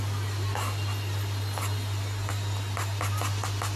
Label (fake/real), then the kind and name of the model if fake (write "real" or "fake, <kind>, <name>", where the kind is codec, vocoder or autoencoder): real